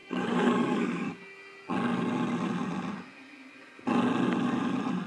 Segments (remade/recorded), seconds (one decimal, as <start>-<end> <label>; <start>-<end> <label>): 0.0-1.1 remade; 1.1-5.1 recorded